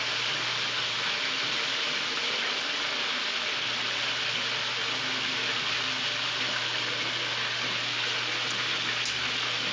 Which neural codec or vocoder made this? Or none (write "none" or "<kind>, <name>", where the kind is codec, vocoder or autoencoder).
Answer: none